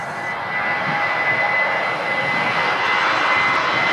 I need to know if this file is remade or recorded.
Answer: recorded